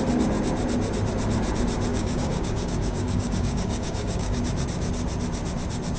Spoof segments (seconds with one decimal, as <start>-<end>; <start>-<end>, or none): 1.9-4.4